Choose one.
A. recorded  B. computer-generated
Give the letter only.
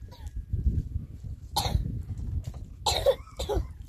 A